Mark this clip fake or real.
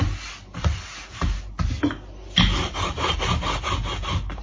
real